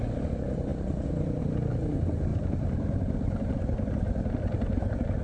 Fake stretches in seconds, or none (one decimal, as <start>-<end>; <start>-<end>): 2.3-4.4